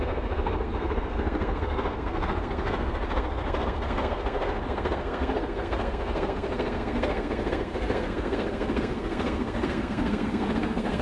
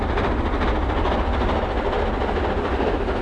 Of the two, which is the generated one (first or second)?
first